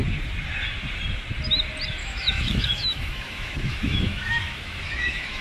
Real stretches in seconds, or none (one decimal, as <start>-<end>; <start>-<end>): 0.0-2.0